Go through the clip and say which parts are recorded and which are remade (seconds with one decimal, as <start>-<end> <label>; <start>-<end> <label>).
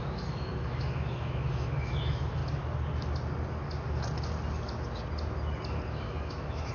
0.0-2.4 remade; 2.4-5.9 recorded; 5.9-6.7 remade